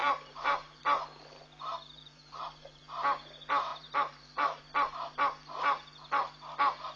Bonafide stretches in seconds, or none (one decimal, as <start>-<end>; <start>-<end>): 0.8-1.7; 2.8-3.7; 4.6-7.0